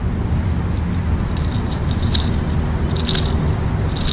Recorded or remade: recorded